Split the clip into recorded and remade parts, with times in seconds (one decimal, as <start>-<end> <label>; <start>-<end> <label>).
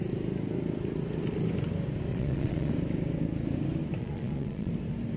0.0-2.1 recorded; 2.1-2.7 remade; 2.7-4.0 recorded; 4.0-4.7 remade; 4.7-5.2 recorded